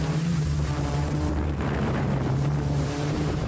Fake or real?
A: fake